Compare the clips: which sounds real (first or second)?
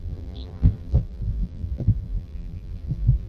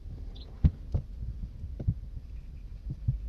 second